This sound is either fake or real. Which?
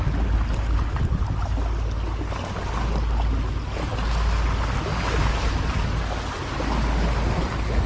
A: real